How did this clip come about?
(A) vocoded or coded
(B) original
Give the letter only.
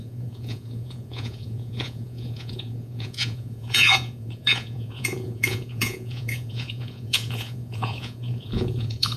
A